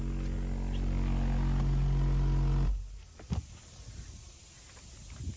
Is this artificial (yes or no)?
no